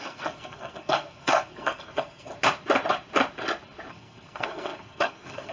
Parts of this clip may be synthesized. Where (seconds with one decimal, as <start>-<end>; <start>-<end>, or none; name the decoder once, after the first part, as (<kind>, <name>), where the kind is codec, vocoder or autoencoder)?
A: 0.0-2.3 (codec, SNAC); 3.9-5.5